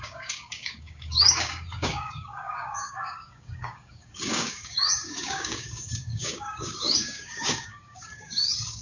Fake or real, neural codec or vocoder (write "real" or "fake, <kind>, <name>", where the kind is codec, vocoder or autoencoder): fake, codec, DAC